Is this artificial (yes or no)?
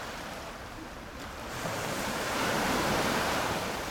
yes